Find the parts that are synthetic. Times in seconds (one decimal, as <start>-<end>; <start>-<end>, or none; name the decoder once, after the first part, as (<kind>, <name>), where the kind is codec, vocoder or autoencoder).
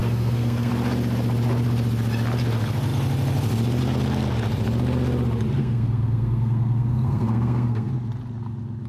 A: 0.0-0.7 (codec, SNAC); 5.6-7.9